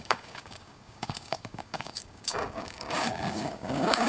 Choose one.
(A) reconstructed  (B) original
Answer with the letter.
A